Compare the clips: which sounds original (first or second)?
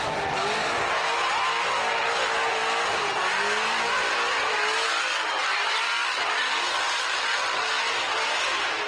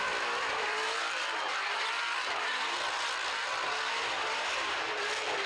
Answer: first